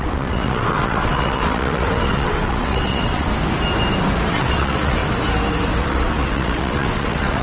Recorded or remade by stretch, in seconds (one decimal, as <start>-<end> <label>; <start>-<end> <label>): 0.0-3.3 remade; 3.3-4.3 recorded; 4.3-5.0 remade; 5.0-5.8 recorded; 5.8-7.4 remade